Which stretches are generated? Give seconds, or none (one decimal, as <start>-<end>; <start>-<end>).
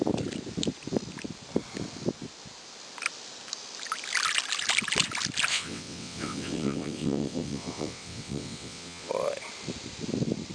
5.5-9.1